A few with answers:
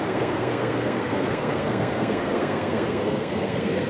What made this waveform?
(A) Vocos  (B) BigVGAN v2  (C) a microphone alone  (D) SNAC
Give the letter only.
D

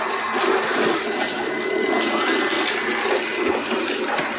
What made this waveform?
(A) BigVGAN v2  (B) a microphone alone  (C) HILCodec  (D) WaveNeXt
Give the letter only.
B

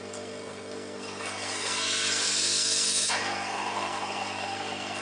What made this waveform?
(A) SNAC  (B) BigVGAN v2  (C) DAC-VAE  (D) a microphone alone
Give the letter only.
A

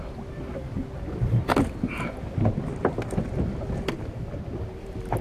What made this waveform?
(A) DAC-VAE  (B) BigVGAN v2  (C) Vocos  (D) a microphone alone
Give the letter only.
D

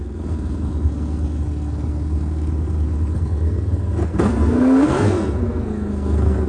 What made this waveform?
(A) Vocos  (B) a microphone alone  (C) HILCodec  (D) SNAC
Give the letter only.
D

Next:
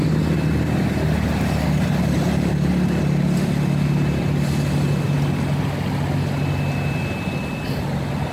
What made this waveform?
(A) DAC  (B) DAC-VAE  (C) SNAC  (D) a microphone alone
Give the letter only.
D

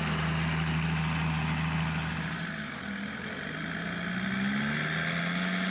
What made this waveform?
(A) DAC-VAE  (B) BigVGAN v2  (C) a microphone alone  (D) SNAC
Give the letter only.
C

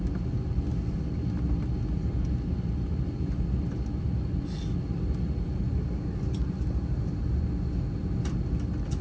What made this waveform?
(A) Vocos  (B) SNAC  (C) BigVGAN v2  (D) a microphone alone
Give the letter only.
D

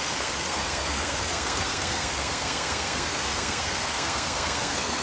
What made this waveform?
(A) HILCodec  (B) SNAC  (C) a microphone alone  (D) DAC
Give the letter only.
B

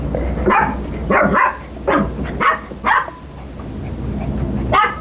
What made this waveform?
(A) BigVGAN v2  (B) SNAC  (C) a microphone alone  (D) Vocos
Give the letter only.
C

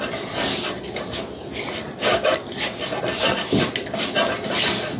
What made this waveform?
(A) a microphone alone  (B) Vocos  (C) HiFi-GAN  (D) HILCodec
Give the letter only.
A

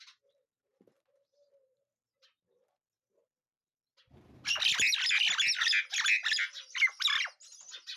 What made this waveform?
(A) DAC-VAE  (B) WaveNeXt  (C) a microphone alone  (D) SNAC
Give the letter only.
C